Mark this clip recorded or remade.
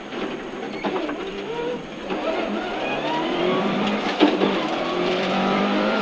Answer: remade